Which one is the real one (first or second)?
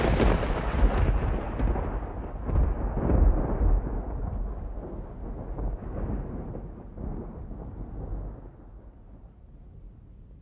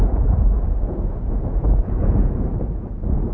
first